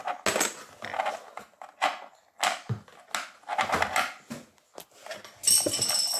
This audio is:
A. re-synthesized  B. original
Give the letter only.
B